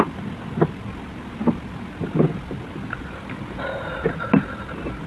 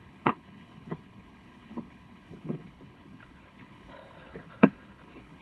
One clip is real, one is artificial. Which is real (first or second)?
first